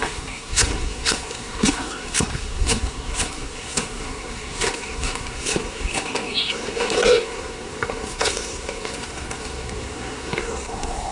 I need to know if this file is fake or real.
fake